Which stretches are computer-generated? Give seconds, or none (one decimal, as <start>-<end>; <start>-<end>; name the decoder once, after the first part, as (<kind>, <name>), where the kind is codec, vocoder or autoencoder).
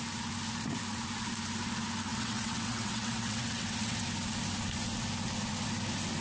2.1-4.0 (vocoder, WaveNeXt)